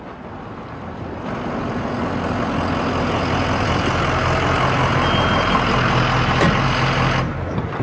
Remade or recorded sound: recorded